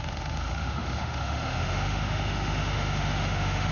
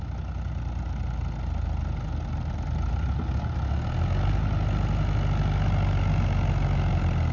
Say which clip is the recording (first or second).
second